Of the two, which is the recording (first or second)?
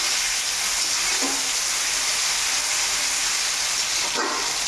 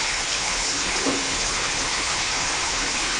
first